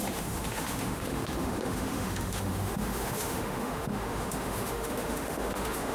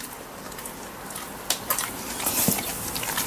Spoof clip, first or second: first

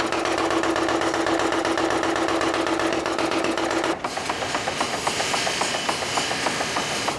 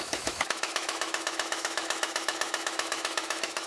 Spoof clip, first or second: second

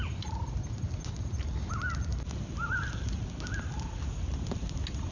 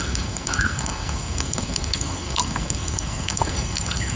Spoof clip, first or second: second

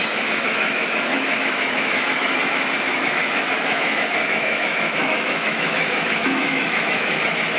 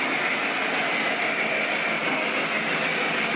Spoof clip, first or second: first